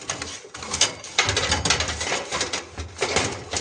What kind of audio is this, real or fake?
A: real